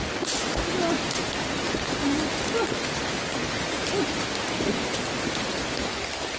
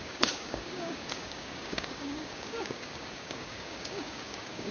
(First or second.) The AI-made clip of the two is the second